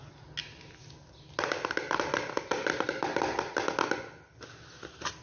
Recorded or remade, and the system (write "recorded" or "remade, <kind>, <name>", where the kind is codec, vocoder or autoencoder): recorded